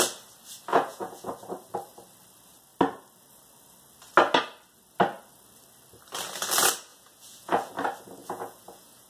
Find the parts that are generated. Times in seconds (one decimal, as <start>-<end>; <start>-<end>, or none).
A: 0.7-1.3; 6.9-7.7; 8.2-9.1